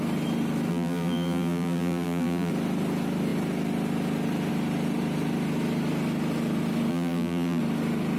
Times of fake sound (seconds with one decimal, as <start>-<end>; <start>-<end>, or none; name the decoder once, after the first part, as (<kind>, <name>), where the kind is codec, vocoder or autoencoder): 0.7-2.5 (vocoder, BigVGAN v2); 6.9-7.6

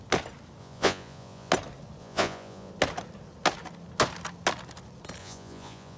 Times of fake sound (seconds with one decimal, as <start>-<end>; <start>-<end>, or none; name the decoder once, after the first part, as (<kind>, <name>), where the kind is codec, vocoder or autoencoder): 0.6-1.5 (vocoder, Vocos); 2.0-2.7; 5.2-6.0

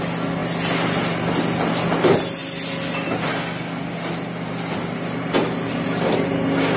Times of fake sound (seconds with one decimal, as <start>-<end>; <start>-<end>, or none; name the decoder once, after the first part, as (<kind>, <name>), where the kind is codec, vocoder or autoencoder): none